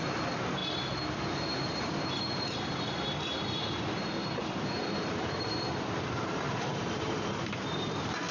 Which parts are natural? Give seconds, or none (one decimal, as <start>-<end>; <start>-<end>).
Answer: 0.6-1.2

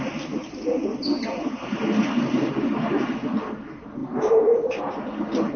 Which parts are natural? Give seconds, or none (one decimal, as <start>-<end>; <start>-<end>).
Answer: 0.0-1.3; 1.8-4.0; 4.8-5.6

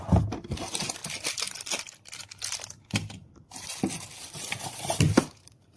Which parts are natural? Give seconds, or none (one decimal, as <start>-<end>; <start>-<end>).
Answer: 1.0-4.5

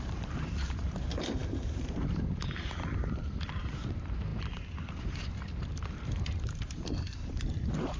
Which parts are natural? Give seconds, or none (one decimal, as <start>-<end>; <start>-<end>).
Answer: none

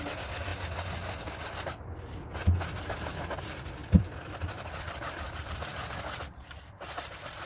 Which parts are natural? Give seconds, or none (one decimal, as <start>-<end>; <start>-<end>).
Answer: 0.5-3.1